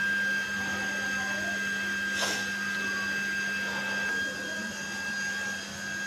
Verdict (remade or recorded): recorded